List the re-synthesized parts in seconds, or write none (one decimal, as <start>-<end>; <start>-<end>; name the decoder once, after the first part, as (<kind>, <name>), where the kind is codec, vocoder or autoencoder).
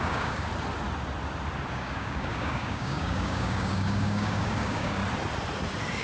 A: 0.0-0.5 (codec, DAC); 1.7-5.0